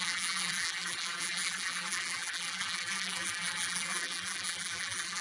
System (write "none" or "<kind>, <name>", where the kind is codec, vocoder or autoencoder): vocoder, BigVGAN v2